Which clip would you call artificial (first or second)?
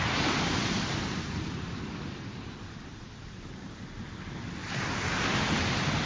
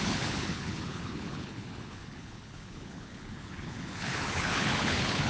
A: second